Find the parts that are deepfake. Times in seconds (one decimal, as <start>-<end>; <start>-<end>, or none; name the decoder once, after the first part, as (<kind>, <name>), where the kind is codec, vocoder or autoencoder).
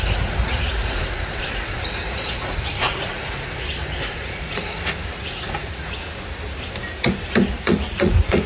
0.0-6.0 (vocoder, Vocos); 7.6-8.5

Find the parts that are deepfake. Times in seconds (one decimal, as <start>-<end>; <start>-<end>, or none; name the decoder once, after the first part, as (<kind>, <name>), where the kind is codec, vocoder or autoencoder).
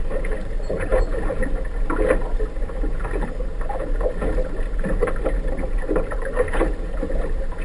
0.0-0.9 (vocoder, BigVGAN v2); 5.5-7.6